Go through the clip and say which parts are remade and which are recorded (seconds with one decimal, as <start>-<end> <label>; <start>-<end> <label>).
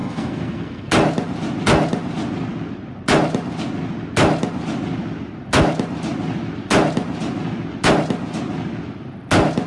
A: 0.0-0.9 remade; 0.9-9.7 recorded